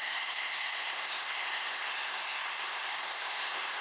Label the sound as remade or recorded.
remade